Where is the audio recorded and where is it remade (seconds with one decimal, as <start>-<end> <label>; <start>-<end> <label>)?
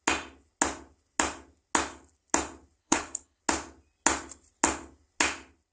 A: 0.0-2.8 recorded; 2.8-3.4 remade; 3.4-5.7 recorded